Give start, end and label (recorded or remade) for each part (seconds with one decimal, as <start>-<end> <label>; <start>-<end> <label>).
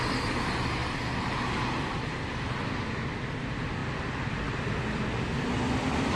0.0-6.2 recorded